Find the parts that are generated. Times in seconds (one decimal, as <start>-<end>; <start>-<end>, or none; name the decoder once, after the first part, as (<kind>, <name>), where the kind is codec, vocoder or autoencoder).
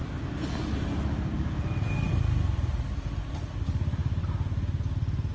none